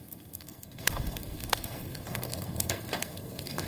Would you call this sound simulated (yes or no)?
yes